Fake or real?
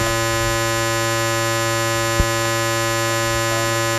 real